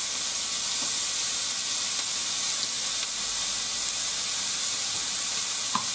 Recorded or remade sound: recorded